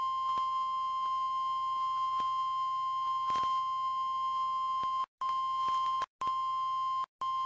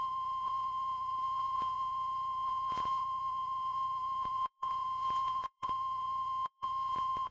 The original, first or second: first